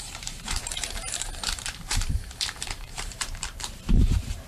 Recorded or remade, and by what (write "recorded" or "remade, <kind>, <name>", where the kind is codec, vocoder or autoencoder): remade, vocoder, BigVGAN v2